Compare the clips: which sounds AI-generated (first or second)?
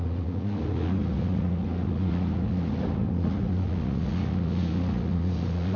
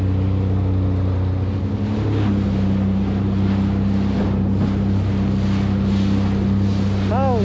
first